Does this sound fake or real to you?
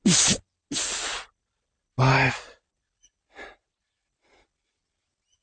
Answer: real